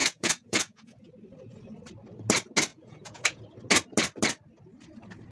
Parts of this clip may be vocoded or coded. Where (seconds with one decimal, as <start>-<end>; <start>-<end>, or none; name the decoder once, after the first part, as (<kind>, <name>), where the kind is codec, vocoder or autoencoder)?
0.0-1.1 (vocoder, Vocos); 2.7-3.4